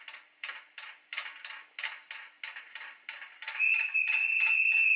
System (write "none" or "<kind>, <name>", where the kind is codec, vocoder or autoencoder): none